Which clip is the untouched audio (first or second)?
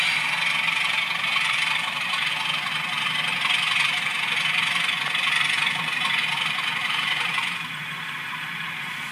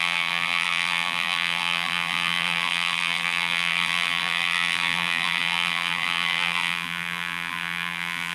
first